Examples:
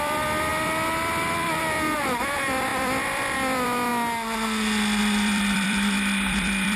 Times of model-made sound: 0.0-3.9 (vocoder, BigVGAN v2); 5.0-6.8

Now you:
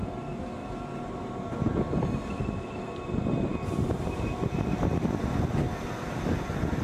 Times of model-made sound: 0.6-2.4 (vocoder, BigVGAN v2)

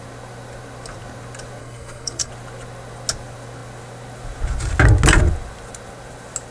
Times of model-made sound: 1.6-2.3 (codec, SNAC)

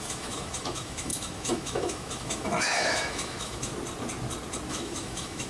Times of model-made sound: 0.0-3.7 (autoencoder, DAC-VAE); 4.7-5.5